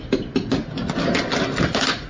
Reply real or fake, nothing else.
real